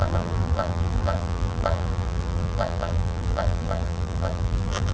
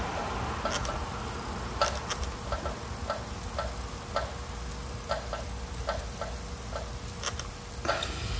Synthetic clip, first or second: first